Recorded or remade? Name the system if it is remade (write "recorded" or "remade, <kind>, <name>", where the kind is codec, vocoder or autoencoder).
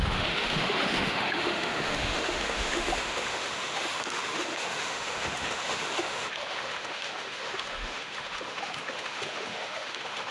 remade, autoencoder, DAC-VAE